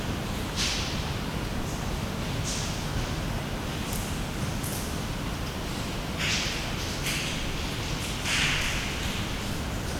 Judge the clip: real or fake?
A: real